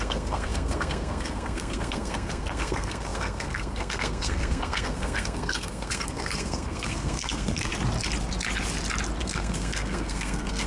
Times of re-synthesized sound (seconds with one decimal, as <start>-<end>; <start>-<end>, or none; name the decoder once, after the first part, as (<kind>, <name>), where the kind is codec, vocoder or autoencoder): 0.0-7.7 (codec, SNAC); 9.2-10.7